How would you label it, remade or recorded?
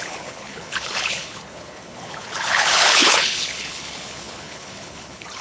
remade